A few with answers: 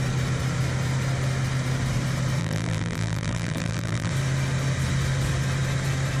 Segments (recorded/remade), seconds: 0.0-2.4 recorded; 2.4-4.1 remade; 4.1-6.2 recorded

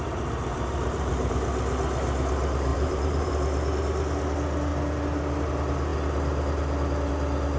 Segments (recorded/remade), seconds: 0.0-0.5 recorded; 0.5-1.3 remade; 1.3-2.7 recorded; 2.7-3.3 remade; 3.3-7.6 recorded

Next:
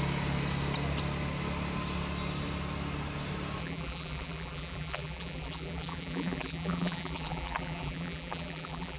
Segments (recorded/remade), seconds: 0.0-3.6 recorded; 3.6-9.0 remade

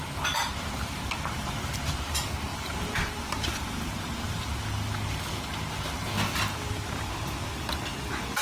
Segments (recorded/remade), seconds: 0.0-2.1 remade; 2.1-2.5 recorded; 2.5-4.6 remade; 4.6-6.3 recorded; 6.3-7.1 remade; 7.1-8.4 recorded

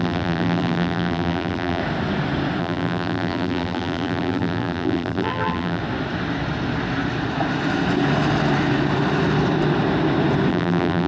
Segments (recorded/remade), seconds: 0.0-1.8 remade; 1.8-2.6 recorded; 2.6-5.8 remade; 5.8-10.5 recorded; 10.5-11.1 remade

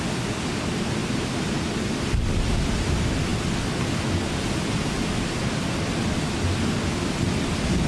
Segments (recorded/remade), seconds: 0.0-1.0 recorded; 1.0-1.7 remade; 1.7-7.9 recorded